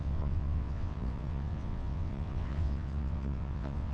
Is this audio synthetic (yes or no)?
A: yes